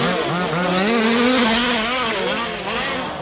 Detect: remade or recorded recorded